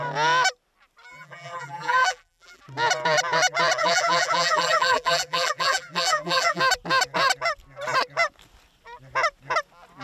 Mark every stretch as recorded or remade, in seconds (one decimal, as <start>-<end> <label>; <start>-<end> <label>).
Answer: 0.0-1.1 recorded; 1.1-2.6 remade; 2.6-3.8 recorded; 3.8-6.6 remade; 6.6-10.0 recorded